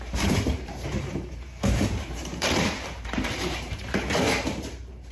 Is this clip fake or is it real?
fake